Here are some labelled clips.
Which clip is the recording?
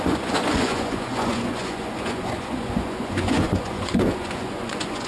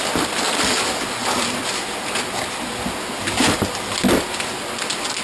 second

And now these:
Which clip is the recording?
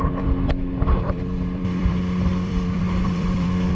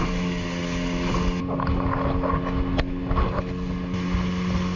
second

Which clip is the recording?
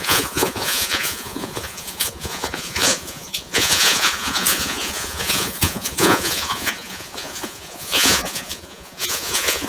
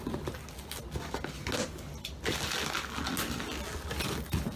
second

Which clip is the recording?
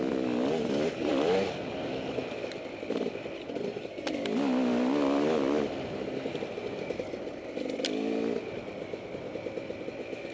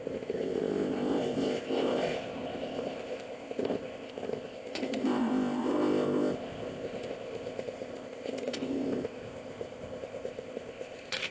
first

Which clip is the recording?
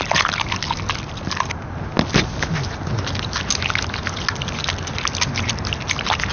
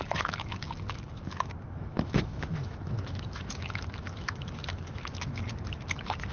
first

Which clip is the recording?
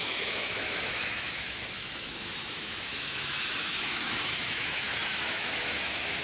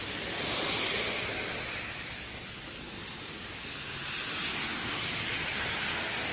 second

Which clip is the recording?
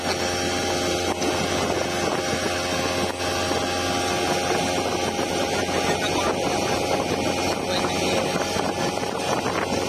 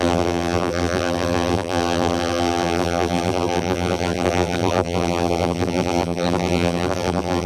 first